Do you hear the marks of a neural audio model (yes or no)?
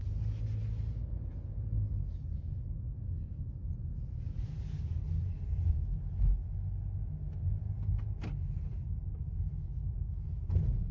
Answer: no